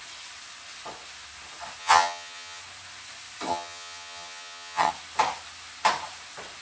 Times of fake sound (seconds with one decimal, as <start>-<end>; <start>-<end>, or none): 1.8-2.6; 3.5-4.9